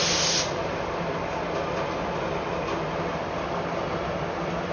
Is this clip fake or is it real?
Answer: real